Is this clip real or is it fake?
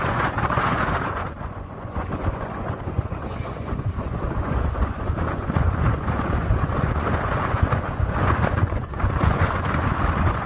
fake